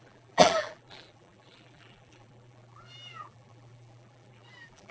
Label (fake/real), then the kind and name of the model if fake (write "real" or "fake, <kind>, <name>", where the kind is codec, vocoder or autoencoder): fake, vocoder, BigVGAN v2